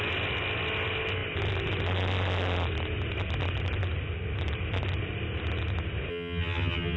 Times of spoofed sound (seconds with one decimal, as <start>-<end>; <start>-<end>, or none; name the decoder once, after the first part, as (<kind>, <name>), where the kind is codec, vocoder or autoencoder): 6.1-7.0 (vocoder, HiFi-GAN)